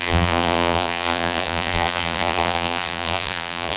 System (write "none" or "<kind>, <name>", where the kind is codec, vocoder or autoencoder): vocoder, BigVGAN v2